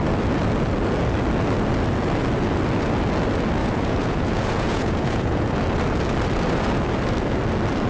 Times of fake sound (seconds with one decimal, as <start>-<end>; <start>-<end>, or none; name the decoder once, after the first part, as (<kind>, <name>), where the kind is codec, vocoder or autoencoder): 3.6-5.5 (vocoder, Vocos)

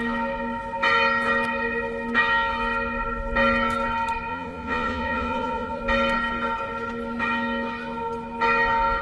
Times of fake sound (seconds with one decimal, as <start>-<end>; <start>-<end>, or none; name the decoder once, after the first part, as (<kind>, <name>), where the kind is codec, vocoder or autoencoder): 4.3-5.8 (vocoder, Vocos)

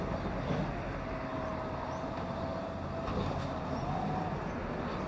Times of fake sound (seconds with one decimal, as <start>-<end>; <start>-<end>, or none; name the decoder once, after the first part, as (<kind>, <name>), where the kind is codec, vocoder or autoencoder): none

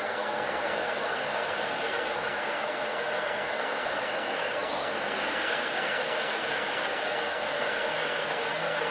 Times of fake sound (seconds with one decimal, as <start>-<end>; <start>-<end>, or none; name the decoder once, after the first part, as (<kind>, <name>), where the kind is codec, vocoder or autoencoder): 0.0-8.9 (codec, SNAC)

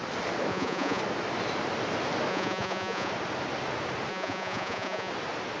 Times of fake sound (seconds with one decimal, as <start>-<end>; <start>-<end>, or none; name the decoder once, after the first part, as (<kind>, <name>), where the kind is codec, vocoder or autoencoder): 0.5-1.0 (vocoder, Vocos); 2.3-3.1; 4.1-5.1

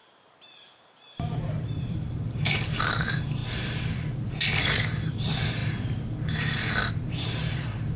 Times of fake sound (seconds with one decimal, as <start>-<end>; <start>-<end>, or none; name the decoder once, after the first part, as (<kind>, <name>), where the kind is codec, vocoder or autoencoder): 0.0-3.4 (vocoder, BigVGAN v2); 4.6-5.6; 6.9-8.0